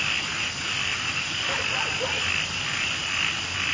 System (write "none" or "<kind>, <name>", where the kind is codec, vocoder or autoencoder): none